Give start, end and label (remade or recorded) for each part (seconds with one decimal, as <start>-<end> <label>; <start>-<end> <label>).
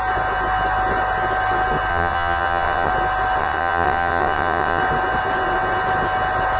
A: 0.0-1.9 recorded; 1.9-2.9 remade; 2.9-3.4 recorded; 3.4-4.8 remade; 4.8-6.6 recorded